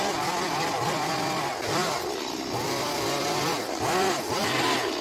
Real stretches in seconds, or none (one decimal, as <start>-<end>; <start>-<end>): 0.0-5.0